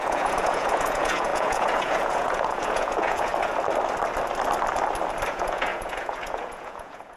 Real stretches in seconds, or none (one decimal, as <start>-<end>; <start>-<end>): 3.3-5.3